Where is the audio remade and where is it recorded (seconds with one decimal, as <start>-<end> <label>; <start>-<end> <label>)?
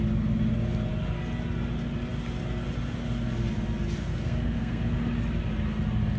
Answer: 0.0-4.0 recorded; 4.0-5.0 remade; 5.0-6.2 recorded